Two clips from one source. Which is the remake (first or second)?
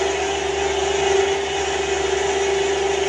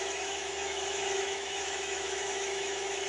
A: second